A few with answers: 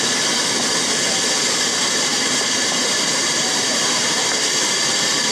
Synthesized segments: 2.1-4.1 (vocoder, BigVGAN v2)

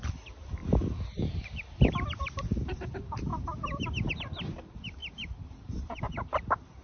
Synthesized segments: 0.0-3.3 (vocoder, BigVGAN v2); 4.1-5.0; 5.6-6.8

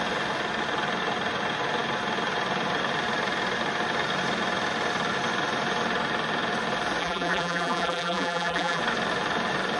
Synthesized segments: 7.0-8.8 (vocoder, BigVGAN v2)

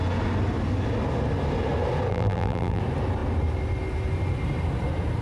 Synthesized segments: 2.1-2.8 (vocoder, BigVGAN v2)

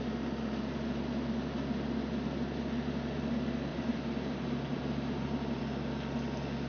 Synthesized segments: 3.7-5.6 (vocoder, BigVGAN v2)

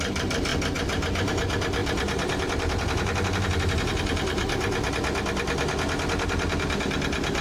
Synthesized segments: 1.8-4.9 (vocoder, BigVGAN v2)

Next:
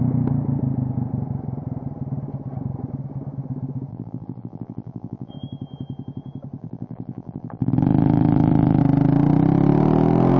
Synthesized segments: 3.9-5.3 (vocoder, BigVGAN v2); 6.6-8.8